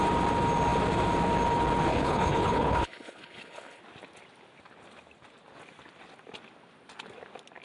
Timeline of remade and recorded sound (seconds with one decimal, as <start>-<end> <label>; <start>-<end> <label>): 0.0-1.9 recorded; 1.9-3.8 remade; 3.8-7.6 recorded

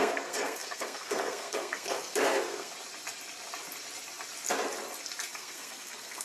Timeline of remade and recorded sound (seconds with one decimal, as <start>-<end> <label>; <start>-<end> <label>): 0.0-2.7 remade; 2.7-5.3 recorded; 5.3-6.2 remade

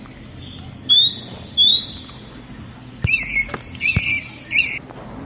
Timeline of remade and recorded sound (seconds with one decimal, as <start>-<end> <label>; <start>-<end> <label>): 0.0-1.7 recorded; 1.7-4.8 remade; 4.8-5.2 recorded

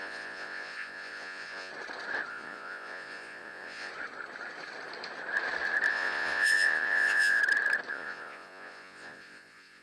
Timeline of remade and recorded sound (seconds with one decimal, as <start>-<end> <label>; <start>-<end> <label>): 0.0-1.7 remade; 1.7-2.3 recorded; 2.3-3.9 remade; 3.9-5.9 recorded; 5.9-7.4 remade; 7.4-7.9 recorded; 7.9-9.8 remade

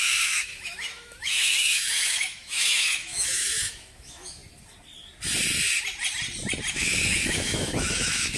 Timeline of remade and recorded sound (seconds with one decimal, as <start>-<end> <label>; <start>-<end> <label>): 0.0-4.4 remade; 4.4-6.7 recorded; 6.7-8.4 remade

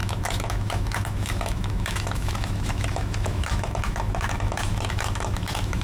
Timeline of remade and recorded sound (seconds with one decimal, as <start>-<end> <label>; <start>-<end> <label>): 0.0-5.8 remade

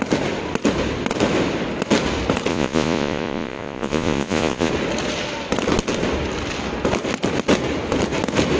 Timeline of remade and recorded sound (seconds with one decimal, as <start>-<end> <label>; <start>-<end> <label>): 0.0-2.5 recorded; 2.5-4.7 remade; 4.7-8.6 recorded

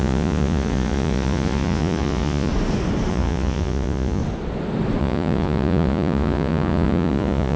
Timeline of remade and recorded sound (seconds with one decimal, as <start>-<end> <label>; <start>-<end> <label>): 0.0-2.5 remade; 2.5-3.1 recorded; 3.1-4.2 remade; 4.2-5.0 recorded; 5.0-7.6 remade